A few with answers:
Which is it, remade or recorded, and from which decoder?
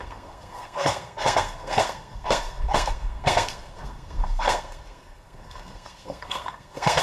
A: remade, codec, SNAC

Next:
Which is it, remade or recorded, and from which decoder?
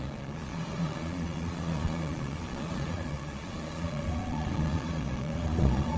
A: remade, vocoder, Vocos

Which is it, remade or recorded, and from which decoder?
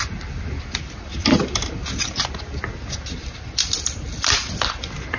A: recorded